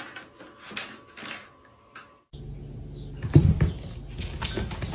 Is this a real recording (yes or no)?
yes